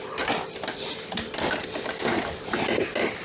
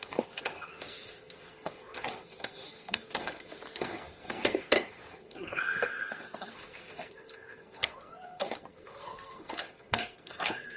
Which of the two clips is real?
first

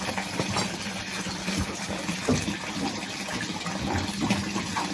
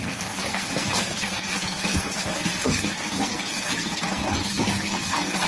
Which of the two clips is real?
first